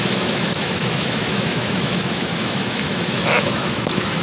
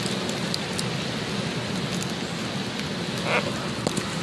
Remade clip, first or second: first